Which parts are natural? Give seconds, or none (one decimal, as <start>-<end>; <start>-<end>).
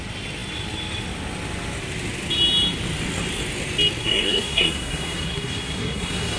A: 0.0-4.0